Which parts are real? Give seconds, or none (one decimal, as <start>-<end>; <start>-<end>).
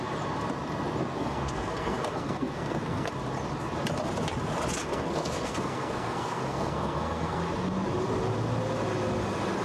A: 0.0-1.0; 3.1-4.8; 7.4-9.6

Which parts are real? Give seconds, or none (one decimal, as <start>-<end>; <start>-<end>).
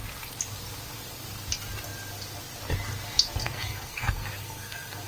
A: 0.0-3.4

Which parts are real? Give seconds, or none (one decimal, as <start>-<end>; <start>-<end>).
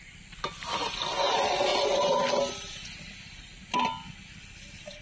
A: 0.0-5.0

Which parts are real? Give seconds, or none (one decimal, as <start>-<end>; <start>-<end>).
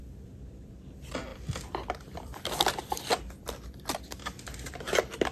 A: 0.7-1.3; 3.0-5.3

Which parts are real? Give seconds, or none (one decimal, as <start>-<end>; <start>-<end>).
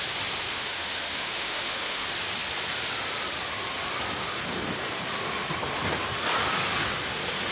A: 0.0-0.5; 2.0-7.5